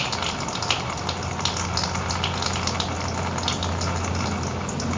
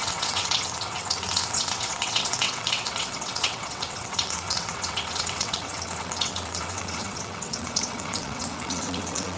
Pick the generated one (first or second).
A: second